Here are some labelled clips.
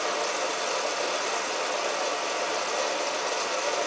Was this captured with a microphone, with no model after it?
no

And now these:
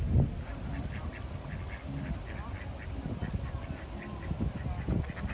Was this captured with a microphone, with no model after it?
yes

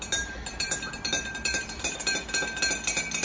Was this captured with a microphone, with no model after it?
yes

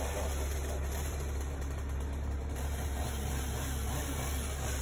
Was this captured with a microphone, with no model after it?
no